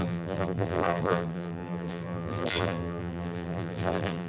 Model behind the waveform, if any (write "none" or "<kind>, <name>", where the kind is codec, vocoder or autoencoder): vocoder, BigVGAN v2